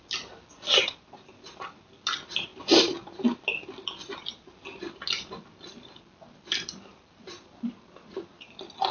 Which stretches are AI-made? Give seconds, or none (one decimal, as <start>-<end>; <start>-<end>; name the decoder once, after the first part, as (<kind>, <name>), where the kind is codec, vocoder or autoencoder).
none